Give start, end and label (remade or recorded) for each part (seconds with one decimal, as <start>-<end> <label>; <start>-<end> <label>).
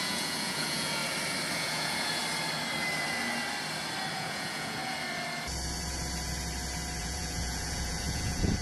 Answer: 0.0-1.0 remade; 1.0-1.5 recorded; 1.5-2.2 remade; 2.2-4.1 recorded; 4.1-4.8 remade; 4.8-7.0 recorded; 7.0-8.6 remade